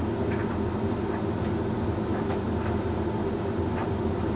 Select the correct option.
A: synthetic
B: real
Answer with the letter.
B